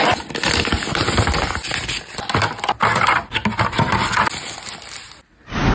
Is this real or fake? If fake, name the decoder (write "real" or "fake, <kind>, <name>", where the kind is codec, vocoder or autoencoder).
real